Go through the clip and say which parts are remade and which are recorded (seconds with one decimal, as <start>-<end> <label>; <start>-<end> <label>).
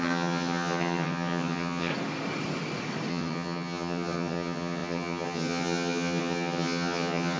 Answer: 0.0-1.9 remade; 1.9-3.1 recorded; 3.1-7.4 remade